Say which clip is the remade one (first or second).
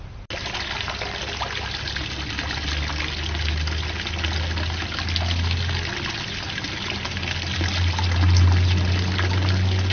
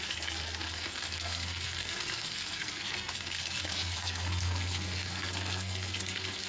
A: second